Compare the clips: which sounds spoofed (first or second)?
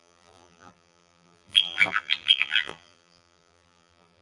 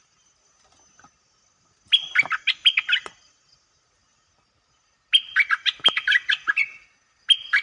first